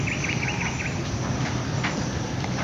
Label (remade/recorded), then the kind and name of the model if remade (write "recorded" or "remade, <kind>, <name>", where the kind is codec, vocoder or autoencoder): remade, vocoder, BigVGAN v2